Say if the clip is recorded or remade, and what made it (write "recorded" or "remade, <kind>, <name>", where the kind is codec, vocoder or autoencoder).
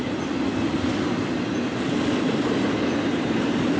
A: recorded